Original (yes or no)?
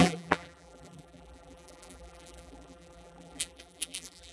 no